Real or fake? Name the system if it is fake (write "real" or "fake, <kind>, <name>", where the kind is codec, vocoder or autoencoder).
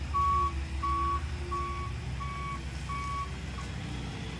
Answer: real